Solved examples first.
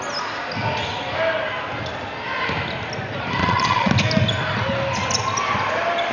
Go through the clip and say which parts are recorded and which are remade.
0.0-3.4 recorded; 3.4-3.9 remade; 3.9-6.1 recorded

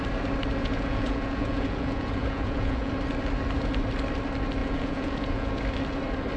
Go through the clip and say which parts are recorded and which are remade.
0.0-0.6 recorded; 0.6-2.9 remade; 2.9-4.6 recorded; 4.6-5.6 remade; 5.6-6.4 recorded

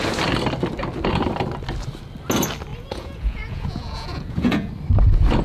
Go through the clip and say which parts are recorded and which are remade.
0.0-2.7 recorded; 2.7-4.7 remade; 4.7-5.4 recorded

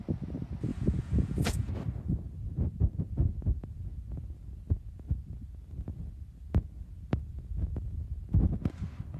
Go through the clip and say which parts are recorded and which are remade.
0.0-0.7 recorded; 0.7-1.7 remade; 1.7-9.2 recorded